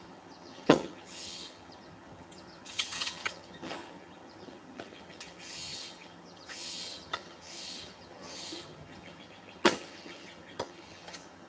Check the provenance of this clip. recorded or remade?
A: remade